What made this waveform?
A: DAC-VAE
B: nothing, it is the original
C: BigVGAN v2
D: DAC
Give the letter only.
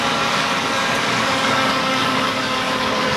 D